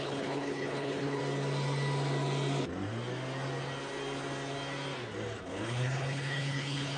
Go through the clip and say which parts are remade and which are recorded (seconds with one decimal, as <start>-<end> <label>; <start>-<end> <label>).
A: 0.0-1.2 remade; 1.2-5.4 recorded; 5.4-7.0 remade